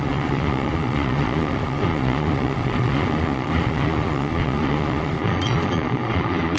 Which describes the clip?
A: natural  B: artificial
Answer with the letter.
B